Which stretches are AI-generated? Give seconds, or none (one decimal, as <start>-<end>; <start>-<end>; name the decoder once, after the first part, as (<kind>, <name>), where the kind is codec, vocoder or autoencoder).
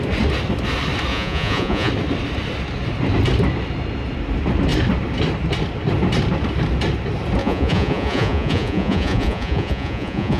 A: 1.1-1.9 (vocoder, Vocos); 7.4-10.4